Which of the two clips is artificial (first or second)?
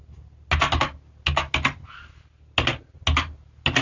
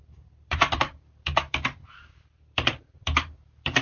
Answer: second